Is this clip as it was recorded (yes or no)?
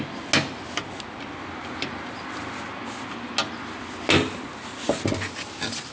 yes